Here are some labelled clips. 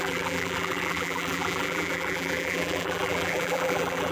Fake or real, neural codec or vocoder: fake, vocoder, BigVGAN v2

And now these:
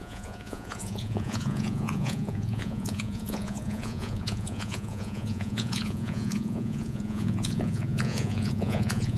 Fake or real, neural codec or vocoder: fake, vocoder, Vocos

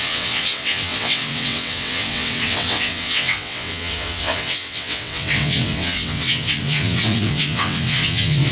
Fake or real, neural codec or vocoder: fake, vocoder, WaveNeXt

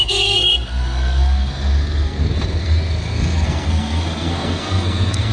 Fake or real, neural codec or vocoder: fake, codec, SNAC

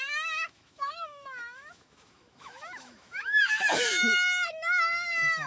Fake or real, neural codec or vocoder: fake, autoencoder, DAC-VAE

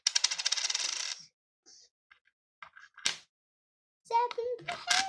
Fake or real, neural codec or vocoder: real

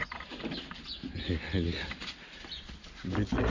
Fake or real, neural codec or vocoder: real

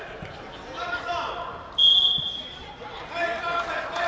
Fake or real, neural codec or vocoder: fake, vocoder, BigVGAN v2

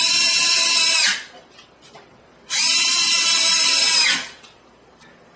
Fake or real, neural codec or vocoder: real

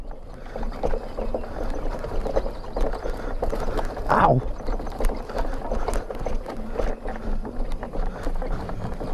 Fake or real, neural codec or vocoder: real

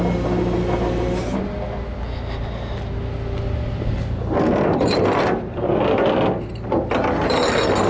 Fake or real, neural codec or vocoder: real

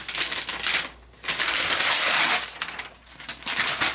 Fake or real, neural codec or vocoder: real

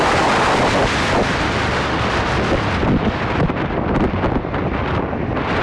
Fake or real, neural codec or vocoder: real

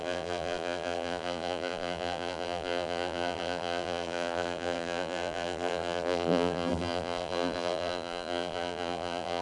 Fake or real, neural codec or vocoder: fake, vocoder, BigVGAN v2